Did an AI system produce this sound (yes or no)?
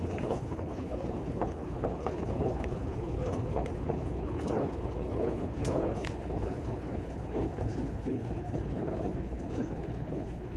yes